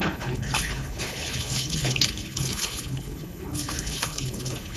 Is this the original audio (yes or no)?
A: no